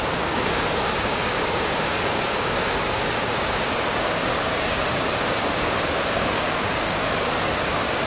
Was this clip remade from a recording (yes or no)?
yes